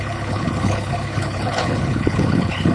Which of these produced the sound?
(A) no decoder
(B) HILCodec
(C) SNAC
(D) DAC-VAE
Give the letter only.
B